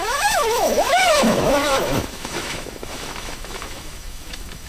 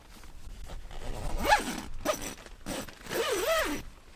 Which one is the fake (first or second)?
first